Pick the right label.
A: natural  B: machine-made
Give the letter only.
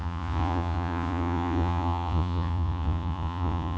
B